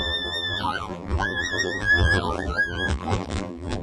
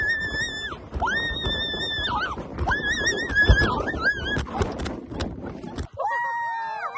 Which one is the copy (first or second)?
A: first